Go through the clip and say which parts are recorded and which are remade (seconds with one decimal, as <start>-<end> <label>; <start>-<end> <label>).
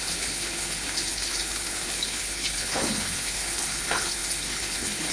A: 0.0-5.1 remade